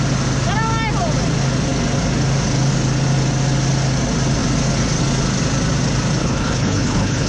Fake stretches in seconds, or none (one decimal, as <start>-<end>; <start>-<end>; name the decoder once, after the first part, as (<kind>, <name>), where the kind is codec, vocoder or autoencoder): 6.2-7.3 (codec, HILCodec)